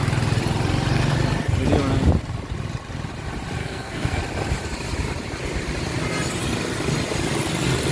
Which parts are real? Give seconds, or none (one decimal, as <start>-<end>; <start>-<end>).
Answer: 0.0-3.6; 4.2-7.9